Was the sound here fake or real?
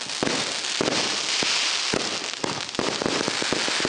real